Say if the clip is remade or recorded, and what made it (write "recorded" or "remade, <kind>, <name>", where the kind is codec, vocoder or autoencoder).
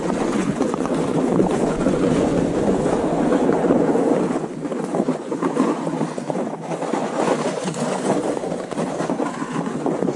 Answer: remade, vocoder, Vocos